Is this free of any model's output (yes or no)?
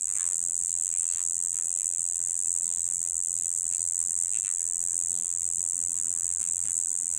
no